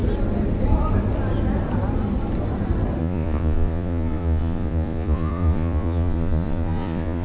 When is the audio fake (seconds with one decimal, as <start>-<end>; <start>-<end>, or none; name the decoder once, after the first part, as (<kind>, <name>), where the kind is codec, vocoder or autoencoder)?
3.0-7.2 (vocoder, Vocos)

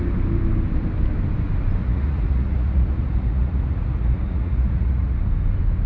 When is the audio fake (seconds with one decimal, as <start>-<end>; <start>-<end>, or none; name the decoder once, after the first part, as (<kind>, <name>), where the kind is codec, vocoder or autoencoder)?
1.8-5.2 (vocoder, Vocos)

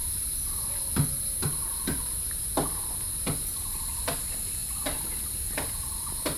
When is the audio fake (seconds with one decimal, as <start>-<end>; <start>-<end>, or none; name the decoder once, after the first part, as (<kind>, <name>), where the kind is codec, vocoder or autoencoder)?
none

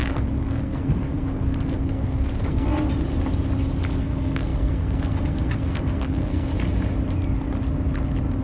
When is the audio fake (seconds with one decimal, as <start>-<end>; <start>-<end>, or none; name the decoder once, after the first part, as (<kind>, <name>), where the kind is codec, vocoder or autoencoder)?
0.0-2.7 (codec, SNAC); 4.0-6.5

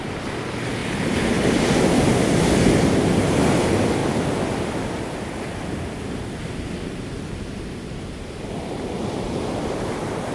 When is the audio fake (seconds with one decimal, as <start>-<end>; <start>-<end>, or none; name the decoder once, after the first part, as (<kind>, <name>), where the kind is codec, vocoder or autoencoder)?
none

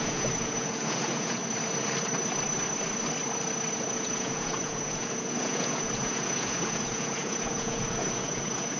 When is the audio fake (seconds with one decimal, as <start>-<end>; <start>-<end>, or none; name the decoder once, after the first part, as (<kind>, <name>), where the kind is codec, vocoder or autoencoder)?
0.0-1.4 (vocoder, Vocos); 3.7-8.8